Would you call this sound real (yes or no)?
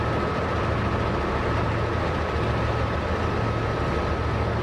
yes